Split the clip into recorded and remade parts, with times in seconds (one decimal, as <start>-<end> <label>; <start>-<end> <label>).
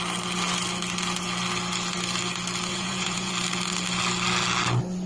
0.0-2.7 recorded; 2.7-3.3 remade; 3.3-5.1 recorded